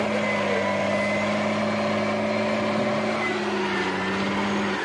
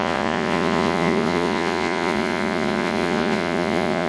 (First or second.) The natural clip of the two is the first